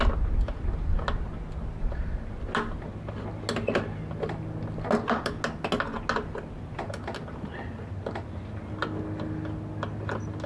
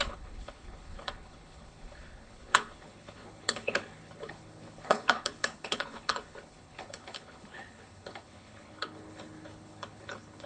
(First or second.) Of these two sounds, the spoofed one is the second